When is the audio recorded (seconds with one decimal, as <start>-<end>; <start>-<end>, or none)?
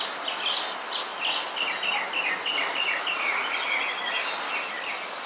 0.0-5.3